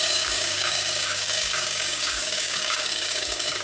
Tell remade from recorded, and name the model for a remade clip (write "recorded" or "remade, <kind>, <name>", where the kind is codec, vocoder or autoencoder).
remade, codec, DAC